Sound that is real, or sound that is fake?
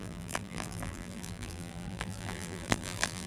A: fake